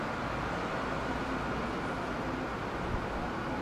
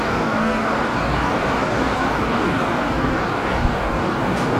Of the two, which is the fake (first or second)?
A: second